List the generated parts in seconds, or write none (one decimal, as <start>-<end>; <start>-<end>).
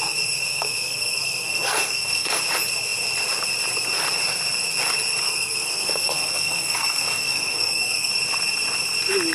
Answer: 0.5-2.4; 5.2-8.1